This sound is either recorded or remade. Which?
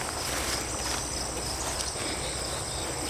recorded